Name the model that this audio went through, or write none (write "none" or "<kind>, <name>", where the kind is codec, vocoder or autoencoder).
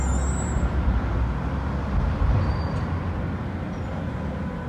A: none